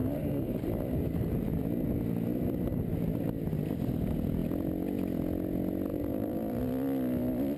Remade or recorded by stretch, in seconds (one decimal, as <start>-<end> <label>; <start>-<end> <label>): 0.0-1.6 remade; 1.6-5.9 recorded; 5.9-6.6 remade; 6.6-7.6 recorded